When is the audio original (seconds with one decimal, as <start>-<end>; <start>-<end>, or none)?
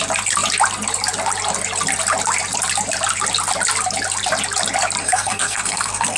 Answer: 0.0-5.0